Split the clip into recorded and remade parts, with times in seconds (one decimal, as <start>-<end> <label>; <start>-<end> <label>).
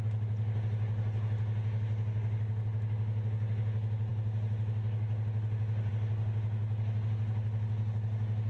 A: 0.0-8.5 recorded